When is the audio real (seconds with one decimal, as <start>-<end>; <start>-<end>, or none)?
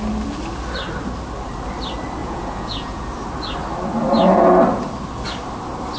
0.0-2.2; 3.0-6.0